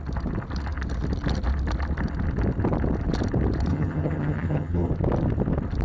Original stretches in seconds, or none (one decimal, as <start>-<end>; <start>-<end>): 0.0-3.7; 4.9-5.8